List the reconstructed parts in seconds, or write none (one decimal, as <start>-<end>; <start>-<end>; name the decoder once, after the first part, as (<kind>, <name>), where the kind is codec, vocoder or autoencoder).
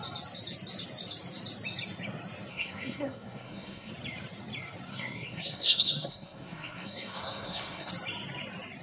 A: 2.5-3.9 (codec, SNAC); 4.9-7.9